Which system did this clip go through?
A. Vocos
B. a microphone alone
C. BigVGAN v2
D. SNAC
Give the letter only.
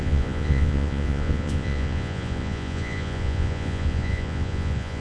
A